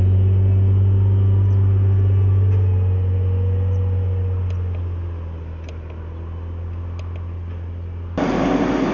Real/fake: real